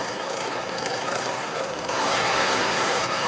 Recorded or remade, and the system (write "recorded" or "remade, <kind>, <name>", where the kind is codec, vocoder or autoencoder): remade, codec, SNAC